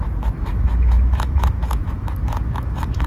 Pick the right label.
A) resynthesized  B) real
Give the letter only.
A